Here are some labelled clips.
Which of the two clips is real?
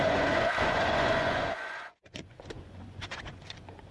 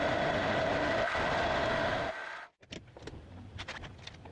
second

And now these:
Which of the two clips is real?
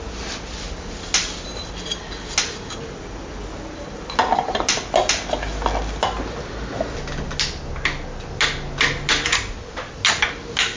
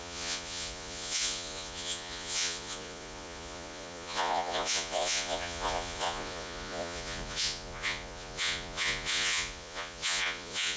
first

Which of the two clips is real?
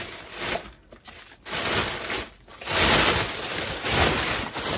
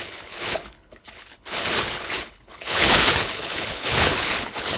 first